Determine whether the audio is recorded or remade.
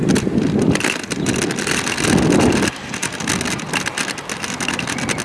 recorded